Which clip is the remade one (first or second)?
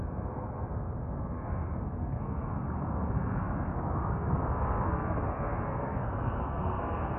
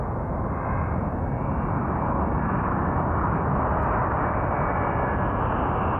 first